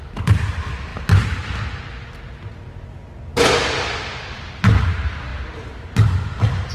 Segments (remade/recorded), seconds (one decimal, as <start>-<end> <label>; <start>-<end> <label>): 0.0-6.7 recorded